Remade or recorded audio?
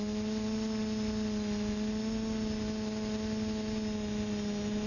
recorded